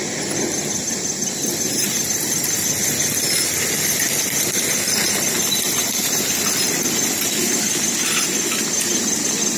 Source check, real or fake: real